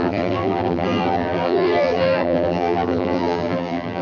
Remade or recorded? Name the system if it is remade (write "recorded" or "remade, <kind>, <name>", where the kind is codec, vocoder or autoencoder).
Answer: remade, vocoder, BigVGAN v2